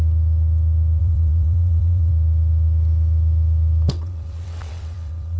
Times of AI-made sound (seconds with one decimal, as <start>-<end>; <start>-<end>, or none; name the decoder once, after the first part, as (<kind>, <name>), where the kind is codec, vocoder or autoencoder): 1.0-2.1 (vocoder, WaveNeXt); 3.9-5.4

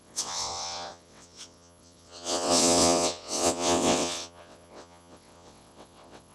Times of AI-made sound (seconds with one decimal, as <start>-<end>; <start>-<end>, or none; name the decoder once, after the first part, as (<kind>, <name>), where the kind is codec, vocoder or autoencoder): 0.0-6.3 (vocoder, WaveNeXt)

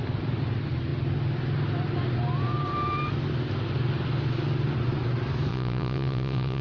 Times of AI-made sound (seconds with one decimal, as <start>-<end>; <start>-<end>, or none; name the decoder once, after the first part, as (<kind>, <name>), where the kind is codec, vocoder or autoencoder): 5.5-6.6 (vocoder, WaveNeXt)

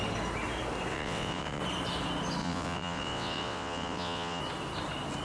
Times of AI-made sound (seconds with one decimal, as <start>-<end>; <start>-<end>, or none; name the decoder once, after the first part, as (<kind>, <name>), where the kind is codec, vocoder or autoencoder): 0.9-1.6 (vocoder, WaveNeXt); 2.4-4.4